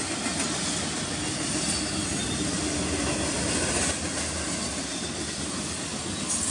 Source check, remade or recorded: recorded